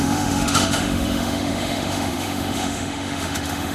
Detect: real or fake fake